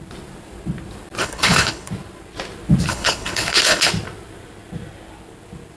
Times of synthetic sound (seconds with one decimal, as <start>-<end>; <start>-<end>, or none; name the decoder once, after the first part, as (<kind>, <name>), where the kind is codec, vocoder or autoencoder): 1.2-1.9 (codec, HILCodec); 2.9-3.9

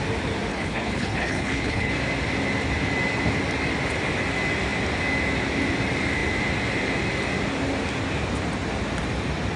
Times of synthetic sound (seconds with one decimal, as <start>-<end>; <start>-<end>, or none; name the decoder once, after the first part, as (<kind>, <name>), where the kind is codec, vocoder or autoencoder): 0.5-1.9 (codec, HILCodec)